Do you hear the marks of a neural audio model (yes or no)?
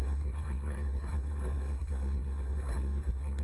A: yes